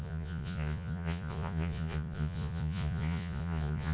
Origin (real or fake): fake